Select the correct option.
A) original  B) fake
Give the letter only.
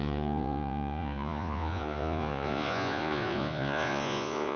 B